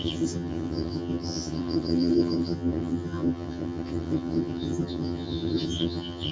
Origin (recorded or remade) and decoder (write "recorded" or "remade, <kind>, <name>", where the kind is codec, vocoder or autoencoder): remade, vocoder, HiFi-GAN